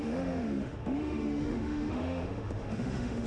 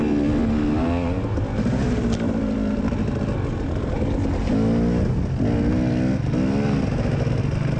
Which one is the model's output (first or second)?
first